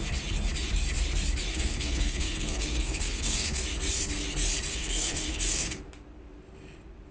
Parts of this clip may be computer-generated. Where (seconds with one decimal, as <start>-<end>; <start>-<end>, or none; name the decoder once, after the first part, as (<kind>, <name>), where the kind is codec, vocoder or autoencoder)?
1.5-3.6 (codec, SNAC); 4.7-5.8